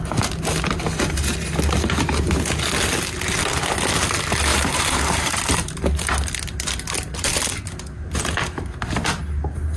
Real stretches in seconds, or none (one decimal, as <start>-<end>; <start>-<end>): 0.0-4.5; 5.8-9.8

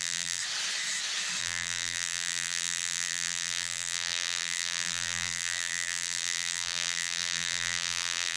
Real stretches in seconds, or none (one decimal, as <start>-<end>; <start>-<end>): 0.4-1.4